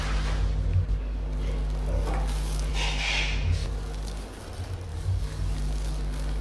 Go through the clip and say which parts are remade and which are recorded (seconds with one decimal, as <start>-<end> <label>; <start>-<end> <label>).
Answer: 0.0-0.7 recorded; 0.7-2.7 remade; 2.7-3.6 recorded; 3.6-4.4 remade; 4.4-4.9 recorded; 4.9-6.4 remade